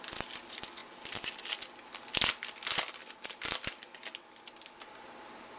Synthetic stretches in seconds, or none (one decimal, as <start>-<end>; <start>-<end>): none